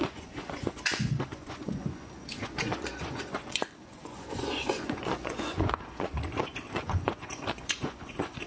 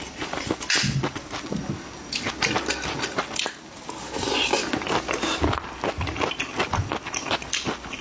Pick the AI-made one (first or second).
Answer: first